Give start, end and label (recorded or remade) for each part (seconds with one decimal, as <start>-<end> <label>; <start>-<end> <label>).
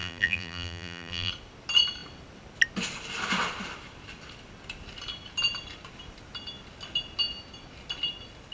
0.0-1.3 remade; 1.3-8.5 recorded